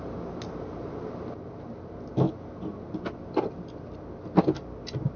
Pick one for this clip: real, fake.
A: real